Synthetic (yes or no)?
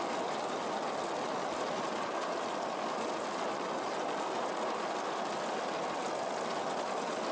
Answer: no